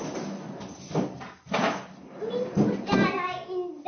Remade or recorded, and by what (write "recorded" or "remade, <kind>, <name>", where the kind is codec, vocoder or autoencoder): recorded